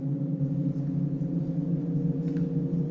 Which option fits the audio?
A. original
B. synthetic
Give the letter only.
A